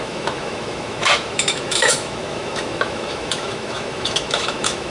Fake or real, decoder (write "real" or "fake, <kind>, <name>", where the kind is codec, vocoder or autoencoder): fake, autoencoder, DAC-VAE